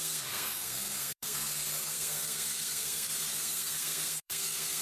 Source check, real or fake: fake